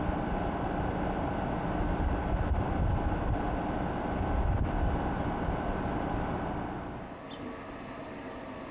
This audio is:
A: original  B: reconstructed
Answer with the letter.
A